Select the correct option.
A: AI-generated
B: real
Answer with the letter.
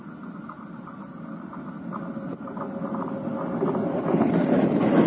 B